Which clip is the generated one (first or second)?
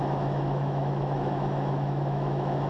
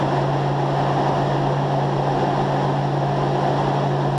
first